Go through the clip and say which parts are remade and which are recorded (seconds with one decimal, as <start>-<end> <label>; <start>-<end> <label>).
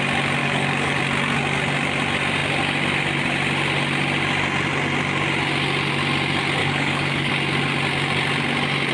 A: 0.0-0.4 recorded; 0.4-1.0 remade; 1.0-6.6 recorded; 6.6-7.3 remade; 7.3-8.9 recorded